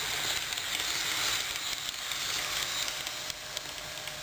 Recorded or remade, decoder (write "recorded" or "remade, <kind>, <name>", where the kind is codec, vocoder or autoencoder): recorded